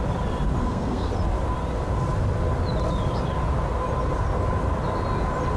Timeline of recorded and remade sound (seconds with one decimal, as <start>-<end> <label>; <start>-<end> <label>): 0.0-0.6 recorded; 0.6-1.1 remade; 1.1-5.6 recorded